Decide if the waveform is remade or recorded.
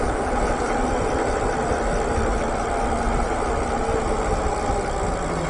recorded